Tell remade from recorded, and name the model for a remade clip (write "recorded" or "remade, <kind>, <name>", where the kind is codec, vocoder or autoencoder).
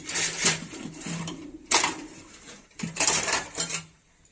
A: remade, vocoder, BigVGAN v2